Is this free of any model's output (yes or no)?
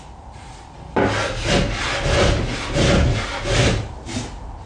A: yes